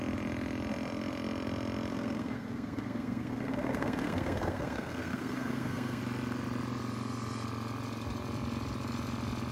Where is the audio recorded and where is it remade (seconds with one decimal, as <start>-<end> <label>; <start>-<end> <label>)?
0.0-1.9 recorded; 1.9-6.0 remade; 6.0-9.5 recorded